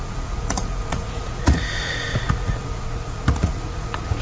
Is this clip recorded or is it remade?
remade